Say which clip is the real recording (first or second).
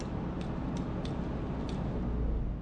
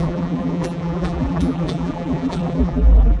first